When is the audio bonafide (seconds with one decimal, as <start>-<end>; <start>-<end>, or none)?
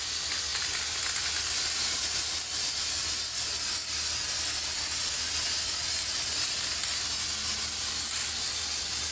0.0-9.1